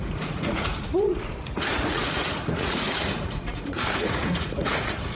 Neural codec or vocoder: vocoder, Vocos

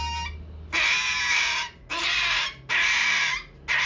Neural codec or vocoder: none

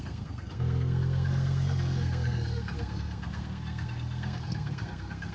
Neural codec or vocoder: codec, SNAC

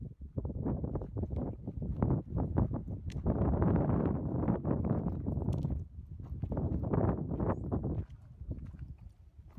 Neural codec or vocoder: none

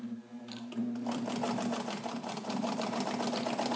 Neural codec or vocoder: none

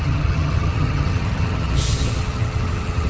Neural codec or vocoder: vocoder, HiFi-GAN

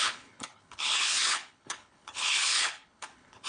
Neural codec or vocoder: codec, HILCodec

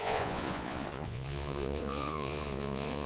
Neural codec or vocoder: vocoder, Vocos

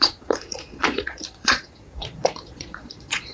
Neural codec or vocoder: vocoder, Vocos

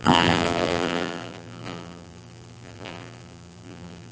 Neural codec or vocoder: vocoder, BigVGAN v2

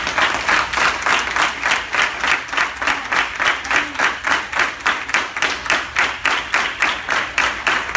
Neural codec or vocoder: none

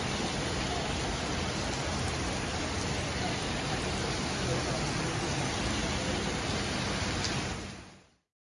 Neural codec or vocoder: none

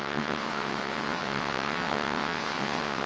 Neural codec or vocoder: vocoder, WaveNeXt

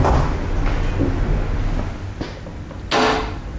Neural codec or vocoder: none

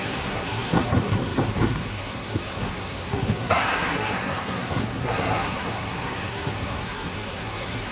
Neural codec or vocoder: codec, SNAC